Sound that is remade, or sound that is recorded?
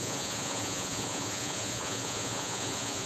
remade